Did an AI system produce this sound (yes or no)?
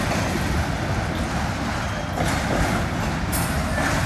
no